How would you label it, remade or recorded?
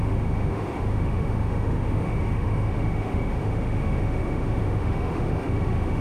remade